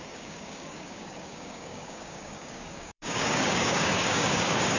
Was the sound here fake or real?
fake